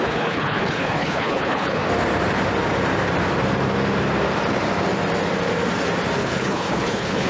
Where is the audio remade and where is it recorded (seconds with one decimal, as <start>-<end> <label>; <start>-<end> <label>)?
0.0-1.8 remade; 1.8-6.2 recorded; 6.2-7.3 remade

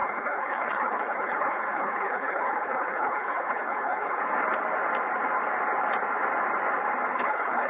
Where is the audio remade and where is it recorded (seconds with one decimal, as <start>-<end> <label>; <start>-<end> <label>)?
0.0-4.2 remade; 4.2-7.2 recorded; 7.2-7.7 remade

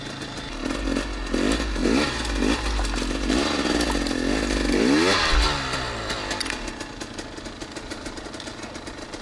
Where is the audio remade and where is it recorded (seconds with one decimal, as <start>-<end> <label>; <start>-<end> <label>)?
0.0-9.2 recorded

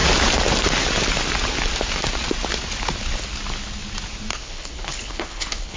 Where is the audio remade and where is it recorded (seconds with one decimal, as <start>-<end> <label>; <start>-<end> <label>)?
0.0-4.3 recorded; 4.3-5.8 remade

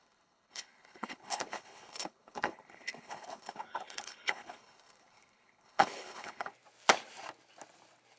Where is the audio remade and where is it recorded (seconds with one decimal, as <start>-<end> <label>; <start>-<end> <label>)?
0.0-6.5 remade; 6.5-8.2 recorded

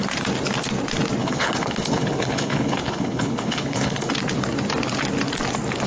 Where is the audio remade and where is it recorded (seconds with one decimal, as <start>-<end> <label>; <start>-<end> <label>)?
0.0-1.2 recorded; 1.2-4.1 remade; 4.1-5.9 recorded

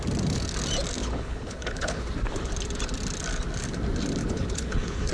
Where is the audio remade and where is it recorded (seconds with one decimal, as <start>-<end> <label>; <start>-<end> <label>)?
0.0-1.0 recorded; 1.0-2.1 remade; 2.1-4.2 recorded; 4.2-5.1 remade

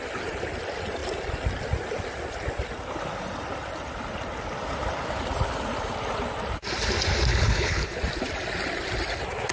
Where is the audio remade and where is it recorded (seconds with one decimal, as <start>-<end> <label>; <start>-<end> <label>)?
0.0-7.3 recorded; 7.3-8.0 remade; 8.0-9.5 recorded